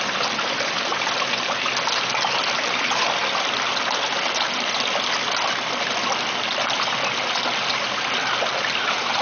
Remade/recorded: recorded